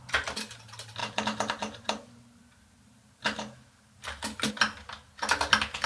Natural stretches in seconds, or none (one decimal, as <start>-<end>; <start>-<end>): 0.0-5.9